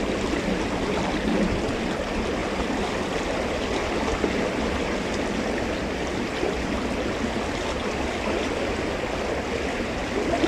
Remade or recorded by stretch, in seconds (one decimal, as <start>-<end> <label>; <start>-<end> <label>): 0.0-10.5 recorded